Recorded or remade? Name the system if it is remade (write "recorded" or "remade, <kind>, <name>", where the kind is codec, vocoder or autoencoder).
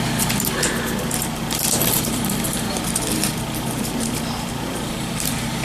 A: recorded